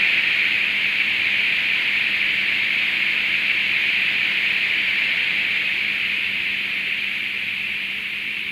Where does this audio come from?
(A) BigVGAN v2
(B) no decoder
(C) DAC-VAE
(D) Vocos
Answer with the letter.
A